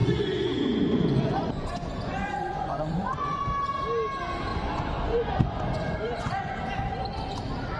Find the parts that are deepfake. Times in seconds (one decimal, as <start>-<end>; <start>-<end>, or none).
0.0-3.4; 4.5-6.6